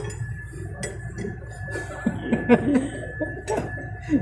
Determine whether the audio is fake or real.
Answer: real